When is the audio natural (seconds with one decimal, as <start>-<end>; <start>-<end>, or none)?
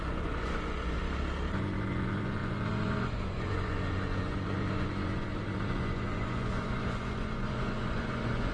1.0-1.5